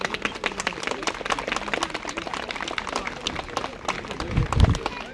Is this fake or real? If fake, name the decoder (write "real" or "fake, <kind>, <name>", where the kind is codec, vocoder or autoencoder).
real